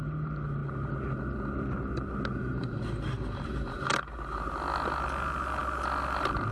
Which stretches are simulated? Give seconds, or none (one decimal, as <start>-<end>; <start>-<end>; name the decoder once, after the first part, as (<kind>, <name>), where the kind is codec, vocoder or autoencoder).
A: none